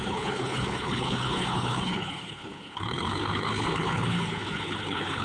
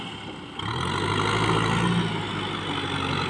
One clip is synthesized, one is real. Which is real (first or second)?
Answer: second